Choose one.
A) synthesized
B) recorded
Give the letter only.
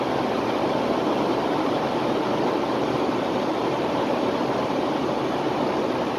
A